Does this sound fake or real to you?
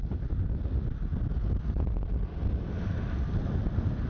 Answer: real